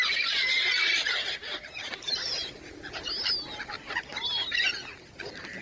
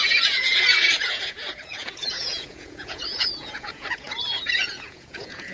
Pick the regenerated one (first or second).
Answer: second